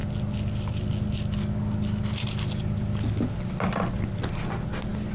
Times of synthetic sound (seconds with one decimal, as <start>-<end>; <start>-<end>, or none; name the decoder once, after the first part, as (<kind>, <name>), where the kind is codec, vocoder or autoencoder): none